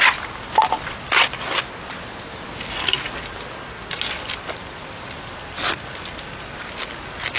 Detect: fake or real real